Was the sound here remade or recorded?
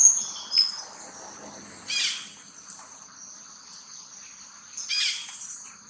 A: recorded